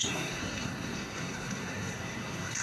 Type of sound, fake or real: fake